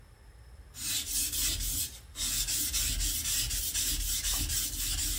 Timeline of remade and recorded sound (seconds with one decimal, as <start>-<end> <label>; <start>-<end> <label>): 0.0-5.2 recorded